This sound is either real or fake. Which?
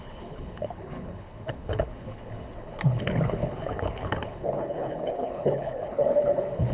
fake